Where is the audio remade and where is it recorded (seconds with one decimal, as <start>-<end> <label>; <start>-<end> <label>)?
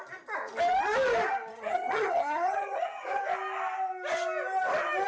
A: 0.0-1.5 recorded; 1.5-3.2 remade; 3.2-5.1 recorded